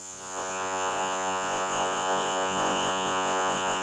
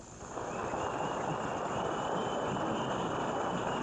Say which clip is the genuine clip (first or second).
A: second